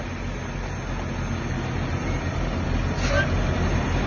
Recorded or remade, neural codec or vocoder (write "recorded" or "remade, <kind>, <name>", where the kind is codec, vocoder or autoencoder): recorded